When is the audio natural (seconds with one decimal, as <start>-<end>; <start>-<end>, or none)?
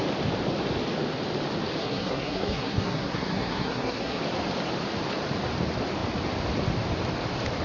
0.0-1.8; 4.2-7.6